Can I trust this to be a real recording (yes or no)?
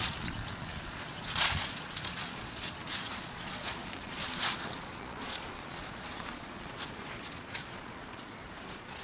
no